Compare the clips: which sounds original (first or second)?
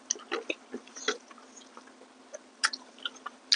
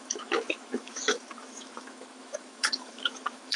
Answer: first